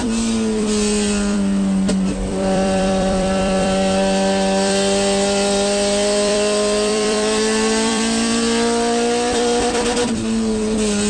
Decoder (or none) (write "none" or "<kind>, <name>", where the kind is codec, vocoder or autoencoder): vocoder, BigVGAN v2